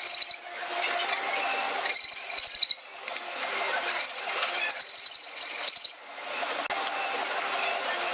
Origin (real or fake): real